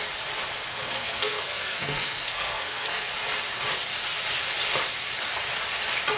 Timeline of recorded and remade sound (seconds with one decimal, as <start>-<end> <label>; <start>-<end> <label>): 0.0-0.7 recorded; 0.7-3.1 remade; 3.1-6.2 recorded